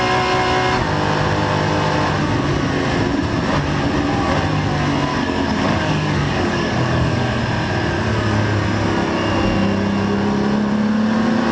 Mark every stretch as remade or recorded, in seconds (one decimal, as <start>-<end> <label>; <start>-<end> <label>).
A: 0.0-5.1 recorded; 5.1-7.2 remade; 7.2-11.5 recorded